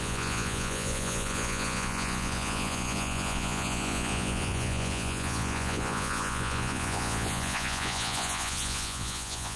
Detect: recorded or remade remade